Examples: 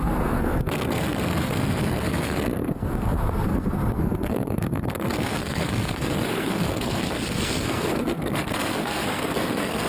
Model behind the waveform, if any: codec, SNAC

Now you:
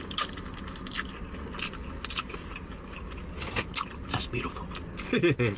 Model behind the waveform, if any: none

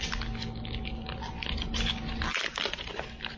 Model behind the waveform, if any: none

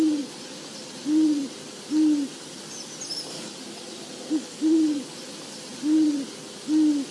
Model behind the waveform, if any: none